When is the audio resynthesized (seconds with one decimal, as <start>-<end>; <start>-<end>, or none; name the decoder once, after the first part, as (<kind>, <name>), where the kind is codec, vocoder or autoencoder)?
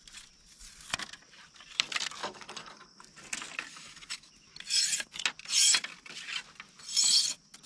2.2-3.0 (codec, DAC); 3.7-4.3